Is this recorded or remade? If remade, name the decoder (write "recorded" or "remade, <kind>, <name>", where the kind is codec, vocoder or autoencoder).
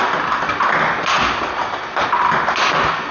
recorded